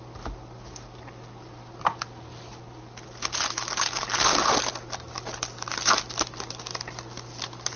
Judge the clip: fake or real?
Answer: real